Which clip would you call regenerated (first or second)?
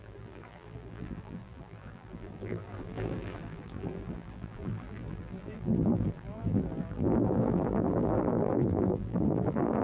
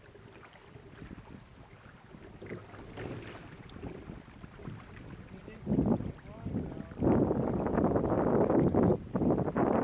first